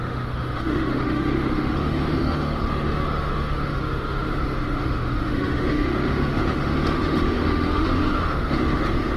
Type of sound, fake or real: fake